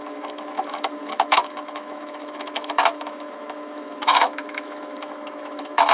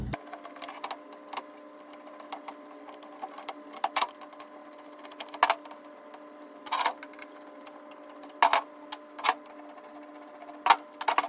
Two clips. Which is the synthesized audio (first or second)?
first